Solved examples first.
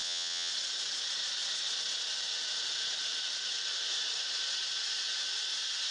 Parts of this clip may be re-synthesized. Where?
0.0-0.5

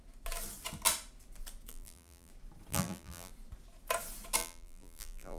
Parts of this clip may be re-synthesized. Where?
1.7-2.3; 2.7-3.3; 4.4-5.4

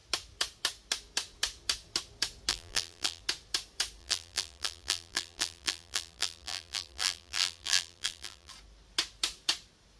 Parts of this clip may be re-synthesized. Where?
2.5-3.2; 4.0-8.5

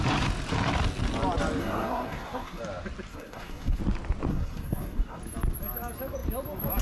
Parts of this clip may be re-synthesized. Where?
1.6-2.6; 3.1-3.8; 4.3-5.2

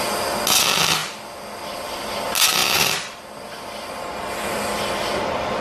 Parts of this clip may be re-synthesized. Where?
1.0-2.1

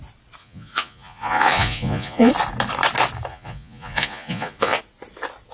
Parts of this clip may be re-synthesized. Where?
0.4-2.3; 3.3-4.8